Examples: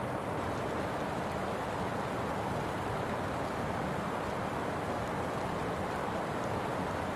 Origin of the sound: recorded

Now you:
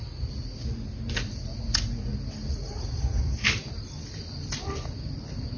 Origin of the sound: recorded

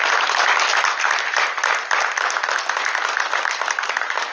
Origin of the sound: recorded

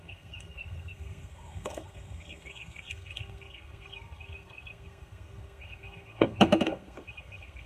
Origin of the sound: remade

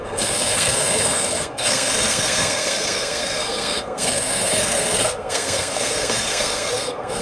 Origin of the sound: remade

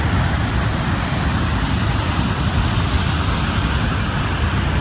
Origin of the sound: recorded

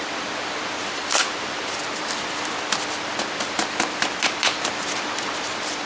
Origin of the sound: remade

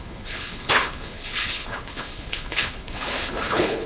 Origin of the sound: remade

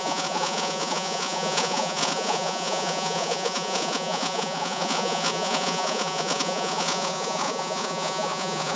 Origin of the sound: remade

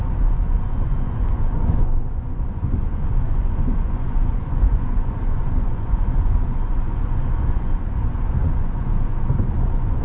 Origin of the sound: remade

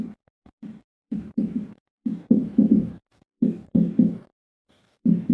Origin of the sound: remade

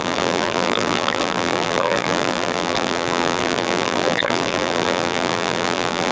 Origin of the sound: remade